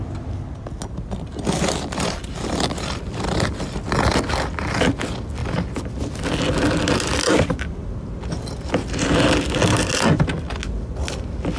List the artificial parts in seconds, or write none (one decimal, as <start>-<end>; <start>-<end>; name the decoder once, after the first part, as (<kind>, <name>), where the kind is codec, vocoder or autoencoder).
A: none